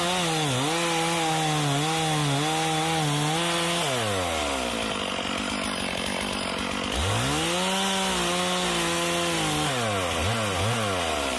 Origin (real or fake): real